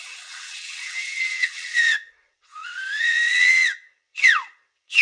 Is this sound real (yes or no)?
no